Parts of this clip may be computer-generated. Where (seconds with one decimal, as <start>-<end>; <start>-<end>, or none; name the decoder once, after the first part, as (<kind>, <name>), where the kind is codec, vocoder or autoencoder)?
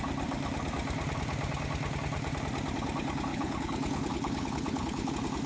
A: 3.3-5.1 (codec, HILCodec)